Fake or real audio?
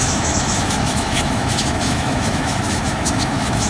fake